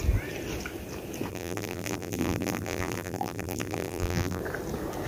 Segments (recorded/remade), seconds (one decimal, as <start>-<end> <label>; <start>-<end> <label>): 0.0-1.3 recorded; 1.3-4.4 remade; 4.4-5.1 recorded